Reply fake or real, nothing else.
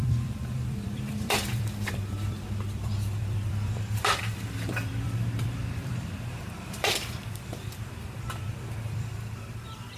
fake